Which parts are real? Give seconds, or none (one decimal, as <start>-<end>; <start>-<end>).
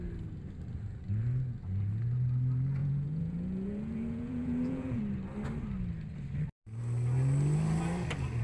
0.0-2.8; 5.0-8.4